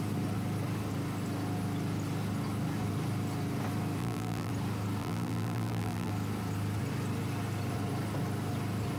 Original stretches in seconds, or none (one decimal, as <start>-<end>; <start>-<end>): 0.0-4.0; 4.5-5.0; 6.1-9.0